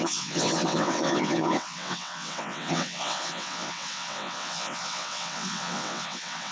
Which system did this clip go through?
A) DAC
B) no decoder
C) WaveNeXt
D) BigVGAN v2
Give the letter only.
C